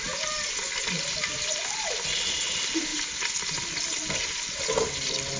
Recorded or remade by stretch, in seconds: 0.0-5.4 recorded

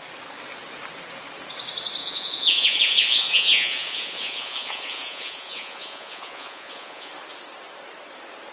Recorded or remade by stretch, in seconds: 0.0-2.0 recorded; 2.0-7.1 remade; 7.1-8.5 recorded

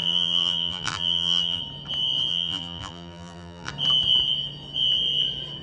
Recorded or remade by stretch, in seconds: 0.0-1.6 remade; 1.6-2.3 recorded; 2.3-3.7 remade; 3.7-5.6 recorded

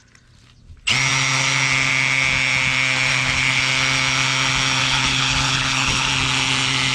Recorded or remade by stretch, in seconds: 0.0-3.1 recorded; 3.1-3.6 remade; 3.6-4.8 recorded; 4.8-6.1 remade; 6.1-6.9 recorded

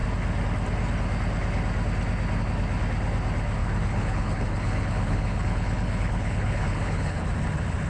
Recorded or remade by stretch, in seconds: 0.0-3.6 recorded; 3.6-7.2 remade; 7.2-7.9 recorded

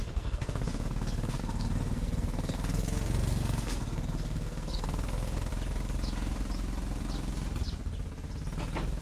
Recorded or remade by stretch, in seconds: 0.0-5.5 remade; 5.5-9.0 recorded

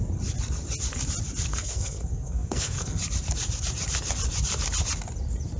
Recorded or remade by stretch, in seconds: 0.0-1.5 recorded; 1.5-3.0 remade; 3.0-5.6 recorded

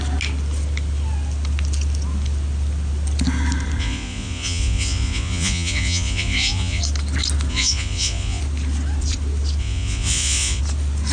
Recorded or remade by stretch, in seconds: 0.0-3.8 recorded; 3.8-6.8 remade; 6.8-7.5 recorded; 7.5-8.4 remade; 8.4-9.6 recorded; 9.6-10.6 remade; 10.6-11.1 recorded